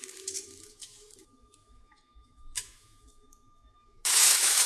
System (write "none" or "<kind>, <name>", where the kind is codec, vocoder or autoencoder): autoencoder, DAC-VAE